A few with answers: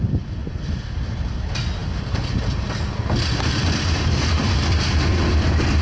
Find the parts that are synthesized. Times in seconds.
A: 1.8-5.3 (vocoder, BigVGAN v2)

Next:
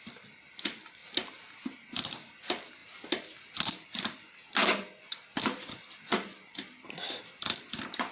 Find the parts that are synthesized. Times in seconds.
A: 0.0-2.8 (vocoder, BigVGAN v2); 3.7-8.1

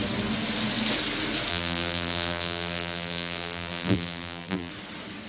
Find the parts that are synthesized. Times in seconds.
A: 1.5-4.7 (vocoder, BigVGAN v2)